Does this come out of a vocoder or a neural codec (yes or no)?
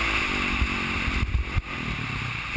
yes